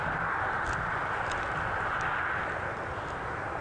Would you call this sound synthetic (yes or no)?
no